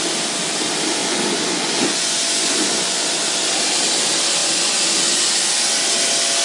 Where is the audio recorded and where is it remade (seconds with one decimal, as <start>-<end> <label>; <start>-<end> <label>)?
0.0-1.0 recorded; 1.0-3.1 remade; 3.1-4.4 recorded; 4.4-5.2 remade; 5.2-6.4 recorded